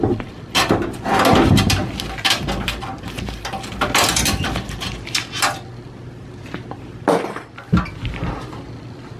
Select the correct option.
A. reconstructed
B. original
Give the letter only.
B